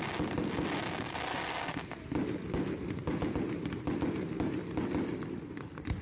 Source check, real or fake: real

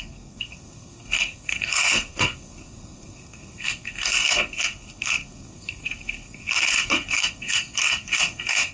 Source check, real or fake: fake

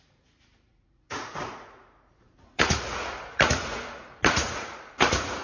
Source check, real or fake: fake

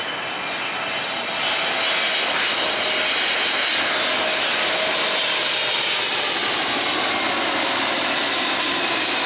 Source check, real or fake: real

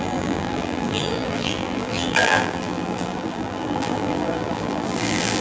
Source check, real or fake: fake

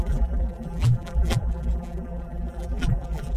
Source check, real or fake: fake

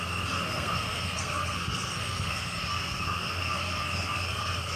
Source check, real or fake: fake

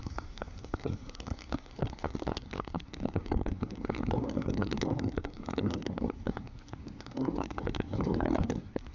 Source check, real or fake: fake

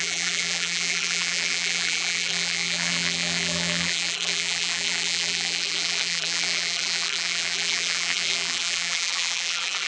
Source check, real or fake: fake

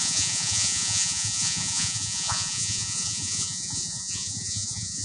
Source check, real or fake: fake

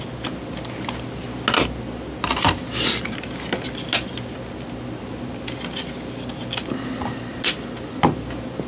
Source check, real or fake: real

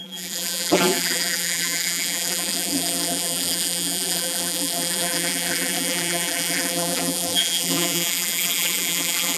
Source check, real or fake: fake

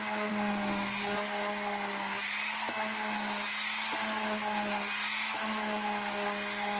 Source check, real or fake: real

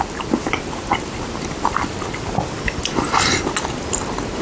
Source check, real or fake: real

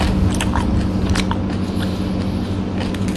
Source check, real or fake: real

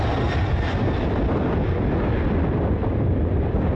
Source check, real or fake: real